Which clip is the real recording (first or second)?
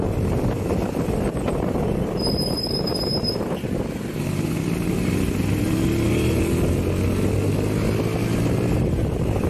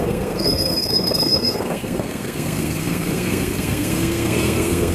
first